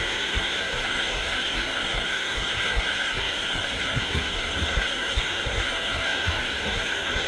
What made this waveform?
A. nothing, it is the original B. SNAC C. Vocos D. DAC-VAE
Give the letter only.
B